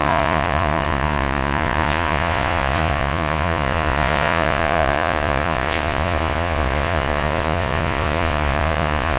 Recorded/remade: remade